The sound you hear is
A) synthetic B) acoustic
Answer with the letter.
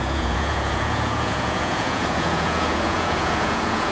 A